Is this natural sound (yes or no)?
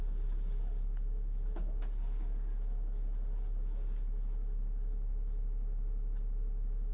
yes